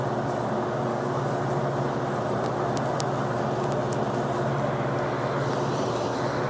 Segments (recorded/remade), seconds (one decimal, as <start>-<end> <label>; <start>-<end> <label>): 0.0-0.9 recorded; 0.9-1.4 remade; 1.4-6.5 recorded